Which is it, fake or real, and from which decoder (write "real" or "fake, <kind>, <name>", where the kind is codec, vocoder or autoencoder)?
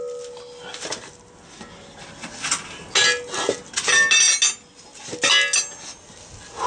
real